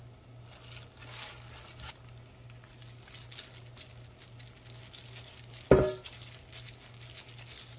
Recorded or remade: recorded